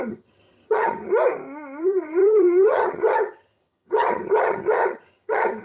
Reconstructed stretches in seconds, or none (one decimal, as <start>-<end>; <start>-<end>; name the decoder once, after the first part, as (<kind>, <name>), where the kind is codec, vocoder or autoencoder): 0.0-1.1 (vocoder, HiFi-GAN); 1.8-5.6